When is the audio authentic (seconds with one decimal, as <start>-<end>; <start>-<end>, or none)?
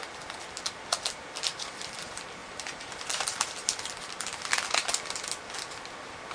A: 0.0-2.4; 3.9-6.3